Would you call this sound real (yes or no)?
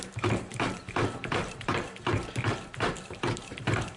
no